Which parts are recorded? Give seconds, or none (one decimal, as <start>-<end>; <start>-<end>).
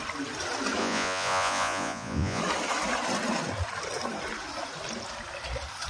0.0-0.8; 2.4-5.9